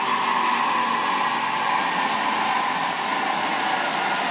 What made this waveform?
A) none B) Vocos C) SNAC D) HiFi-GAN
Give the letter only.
A